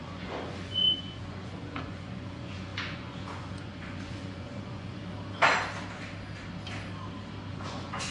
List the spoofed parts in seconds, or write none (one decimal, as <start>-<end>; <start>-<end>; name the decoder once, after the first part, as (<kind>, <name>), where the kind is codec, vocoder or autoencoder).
0.0-5.0 (vocoder, Vocos); 7.5-8.1